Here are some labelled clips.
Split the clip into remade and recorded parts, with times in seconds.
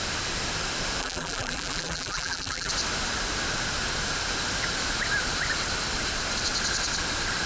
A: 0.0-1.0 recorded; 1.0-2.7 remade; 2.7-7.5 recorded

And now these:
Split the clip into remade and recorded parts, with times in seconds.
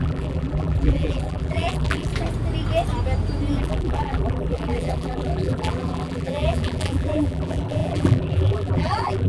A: 0.0-2.1 remade; 2.1-3.6 recorded; 3.6-9.3 remade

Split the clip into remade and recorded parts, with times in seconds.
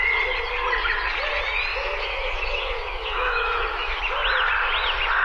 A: 0.0-1.7 recorded; 1.7-4.0 remade; 4.0-5.2 recorded